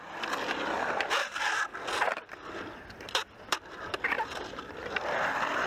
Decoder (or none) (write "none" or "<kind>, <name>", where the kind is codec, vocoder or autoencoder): vocoder, BigVGAN v2